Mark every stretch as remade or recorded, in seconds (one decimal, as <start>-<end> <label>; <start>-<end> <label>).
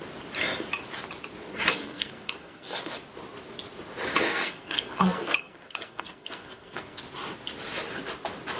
0.0-1.5 recorded; 1.5-3.0 remade; 3.0-4.1 recorded; 4.1-7.0 remade; 7.0-8.6 recorded